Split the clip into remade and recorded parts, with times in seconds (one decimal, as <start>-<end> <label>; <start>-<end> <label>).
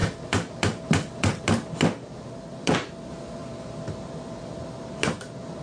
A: 0.0-5.6 recorded